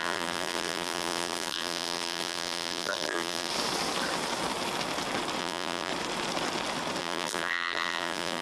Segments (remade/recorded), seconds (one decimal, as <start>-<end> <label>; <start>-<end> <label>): 0.0-3.5 remade; 3.5-5.4 recorded; 5.4-5.9 remade; 5.9-7.0 recorded; 7.0-8.4 remade